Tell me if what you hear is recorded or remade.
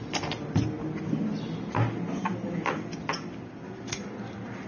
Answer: recorded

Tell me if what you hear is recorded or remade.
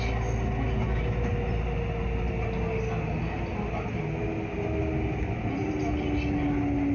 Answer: recorded